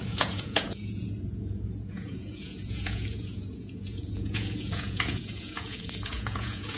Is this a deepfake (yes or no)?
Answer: yes